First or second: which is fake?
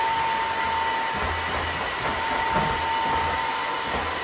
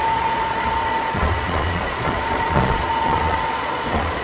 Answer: second